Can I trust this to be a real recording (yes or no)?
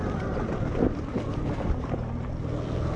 yes